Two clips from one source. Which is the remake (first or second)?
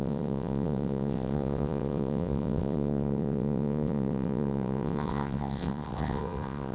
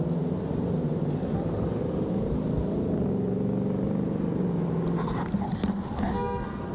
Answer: first